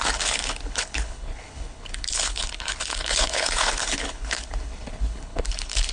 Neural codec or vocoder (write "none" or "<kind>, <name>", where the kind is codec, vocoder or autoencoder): codec, HILCodec